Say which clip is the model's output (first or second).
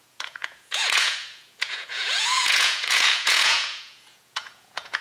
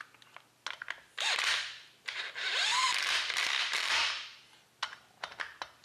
first